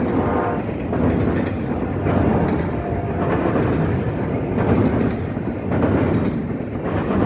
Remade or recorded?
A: recorded